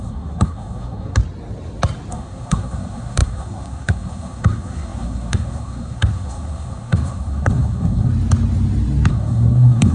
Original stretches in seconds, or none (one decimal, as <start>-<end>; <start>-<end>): 1.2-2.1; 8.1-9.1